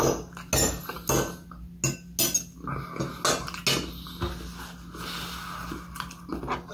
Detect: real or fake real